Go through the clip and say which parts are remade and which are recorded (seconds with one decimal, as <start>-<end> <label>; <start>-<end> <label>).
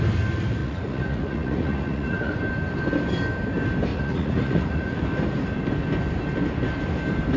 0.0-0.6 recorded; 0.6-2.4 remade; 2.4-3.9 recorded; 3.9-5.0 remade; 5.0-7.4 recorded